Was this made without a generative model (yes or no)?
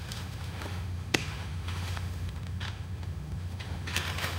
no